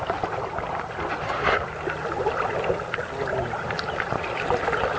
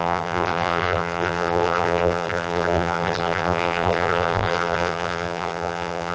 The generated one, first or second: second